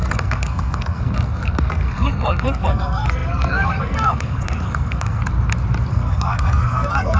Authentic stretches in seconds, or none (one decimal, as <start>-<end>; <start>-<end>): 5.2-5.9